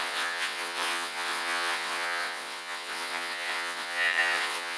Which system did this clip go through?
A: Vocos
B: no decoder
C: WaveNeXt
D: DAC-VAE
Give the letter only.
C